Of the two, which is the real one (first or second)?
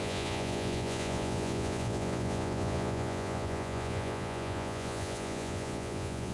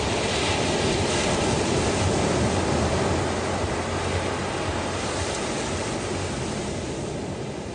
second